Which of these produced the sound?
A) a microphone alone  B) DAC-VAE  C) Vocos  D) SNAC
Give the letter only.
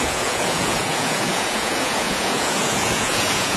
C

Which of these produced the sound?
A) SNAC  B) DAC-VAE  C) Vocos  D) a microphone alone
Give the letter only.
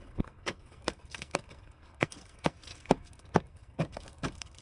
A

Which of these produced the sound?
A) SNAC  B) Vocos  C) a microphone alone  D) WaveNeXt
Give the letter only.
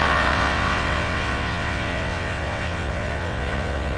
D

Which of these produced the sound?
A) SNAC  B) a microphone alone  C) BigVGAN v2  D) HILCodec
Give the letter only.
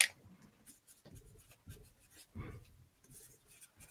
B